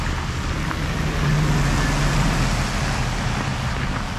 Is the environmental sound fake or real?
real